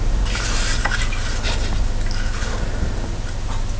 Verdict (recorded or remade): recorded